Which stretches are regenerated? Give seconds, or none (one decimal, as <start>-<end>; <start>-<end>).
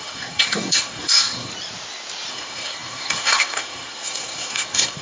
0.0-1.5; 2.3-5.0